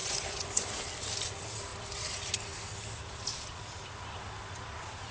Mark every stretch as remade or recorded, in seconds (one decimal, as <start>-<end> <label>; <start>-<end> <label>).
0.0-0.7 remade; 0.7-5.1 recorded